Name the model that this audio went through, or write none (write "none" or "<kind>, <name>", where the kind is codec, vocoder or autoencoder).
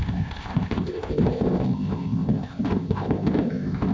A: codec, ZipCodec